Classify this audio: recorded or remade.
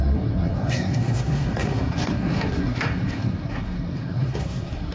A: remade